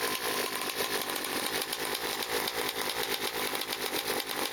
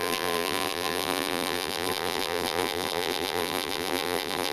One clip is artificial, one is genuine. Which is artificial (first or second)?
second